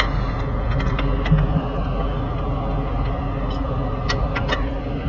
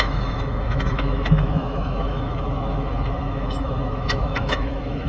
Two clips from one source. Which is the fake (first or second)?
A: second